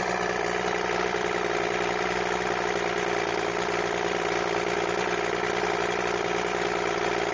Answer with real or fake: real